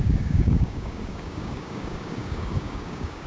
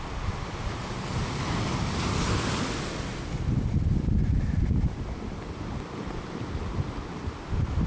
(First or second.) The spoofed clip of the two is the first